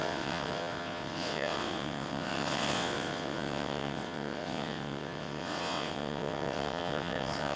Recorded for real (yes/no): no